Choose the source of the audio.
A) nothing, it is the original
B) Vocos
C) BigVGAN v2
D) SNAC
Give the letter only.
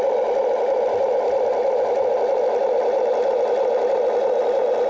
A